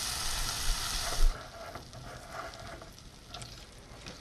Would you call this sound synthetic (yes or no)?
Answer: no